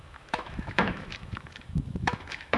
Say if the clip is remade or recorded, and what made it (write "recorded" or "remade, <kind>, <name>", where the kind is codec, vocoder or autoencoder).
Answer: remade, autoencoder, DAC-VAE